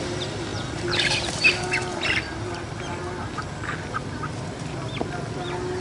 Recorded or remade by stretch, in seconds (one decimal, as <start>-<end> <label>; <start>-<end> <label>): 0.0-5.8 recorded